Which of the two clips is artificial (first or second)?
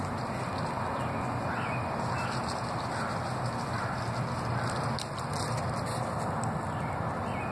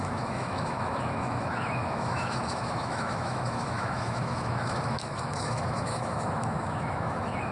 second